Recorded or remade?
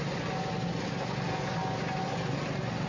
recorded